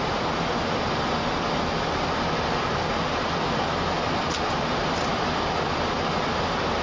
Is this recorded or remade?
recorded